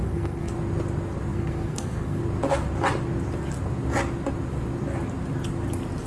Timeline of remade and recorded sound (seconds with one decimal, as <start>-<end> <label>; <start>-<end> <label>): 0.0-0.5 remade; 0.5-1.3 recorded; 1.3-2.2 remade; 2.2-6.1 recorded